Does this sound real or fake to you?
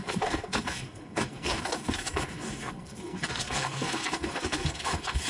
fake